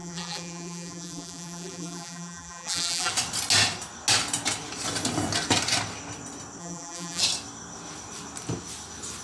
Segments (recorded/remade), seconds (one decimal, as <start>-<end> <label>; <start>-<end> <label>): 0.0-3.1 remade; 3.1-6.6 recorded; 6.6-7.2 remade; 7.2-9.2 recorded

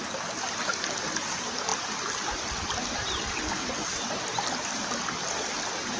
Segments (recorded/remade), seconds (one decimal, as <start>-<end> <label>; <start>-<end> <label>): 0.0-6.0 recorded